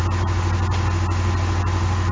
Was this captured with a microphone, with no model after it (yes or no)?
yes